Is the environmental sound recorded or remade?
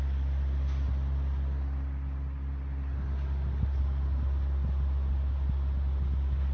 recorded